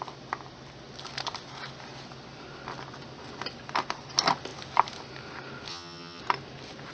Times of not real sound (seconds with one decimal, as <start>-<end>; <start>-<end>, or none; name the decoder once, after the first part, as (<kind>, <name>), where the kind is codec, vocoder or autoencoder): 5.7-6.2 (vocoder, HiFi-GAN)